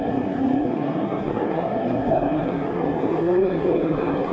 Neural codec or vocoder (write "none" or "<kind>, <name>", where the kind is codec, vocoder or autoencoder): codec, SNAC